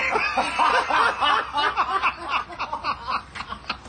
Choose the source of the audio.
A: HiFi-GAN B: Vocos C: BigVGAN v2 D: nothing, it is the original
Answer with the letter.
D